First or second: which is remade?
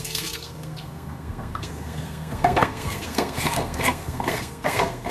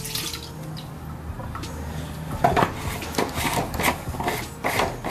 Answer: first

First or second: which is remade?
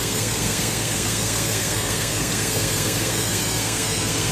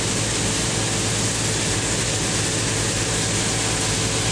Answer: first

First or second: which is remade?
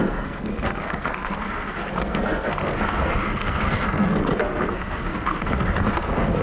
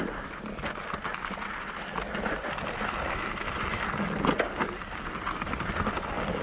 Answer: first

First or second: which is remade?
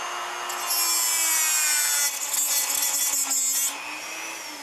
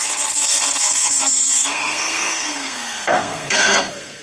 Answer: second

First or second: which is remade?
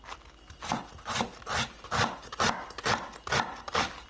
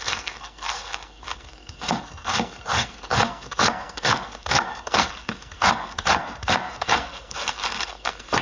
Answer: second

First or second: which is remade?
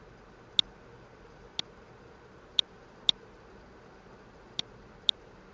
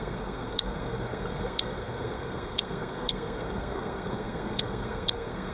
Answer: second